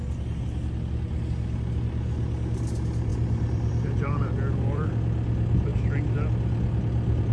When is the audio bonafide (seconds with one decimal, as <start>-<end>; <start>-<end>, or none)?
0.0-3.1; 4.9-7.3